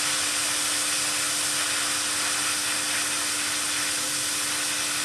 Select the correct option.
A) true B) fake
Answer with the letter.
A